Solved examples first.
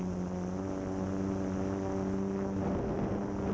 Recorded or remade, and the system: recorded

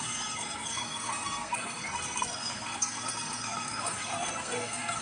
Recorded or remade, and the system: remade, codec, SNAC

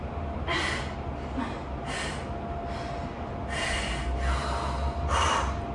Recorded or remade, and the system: recorded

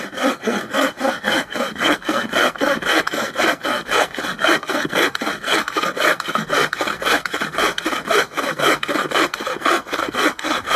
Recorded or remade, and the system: remade, codec, SNAC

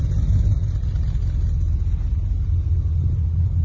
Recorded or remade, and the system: recorded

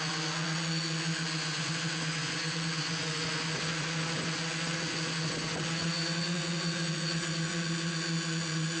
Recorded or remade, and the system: remade, vocoder, Vocos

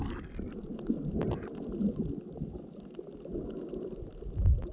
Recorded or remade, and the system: recorded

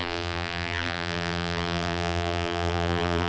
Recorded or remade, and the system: remade, vocoder, BigVGAN v2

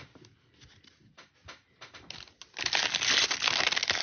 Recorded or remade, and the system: recorded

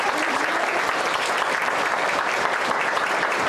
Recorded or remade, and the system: remade, vocoder, BigVGAN v2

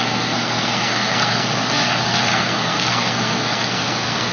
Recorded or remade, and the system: remade, codec, SNAC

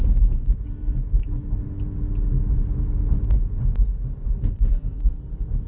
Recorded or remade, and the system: recorded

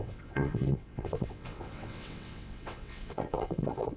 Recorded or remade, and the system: remade, vocoder, WaveNeXt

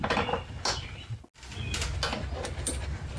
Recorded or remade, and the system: recorded